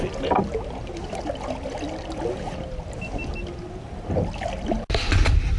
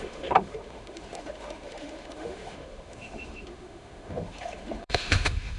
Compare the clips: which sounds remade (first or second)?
second